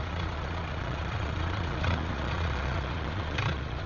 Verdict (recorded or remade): remade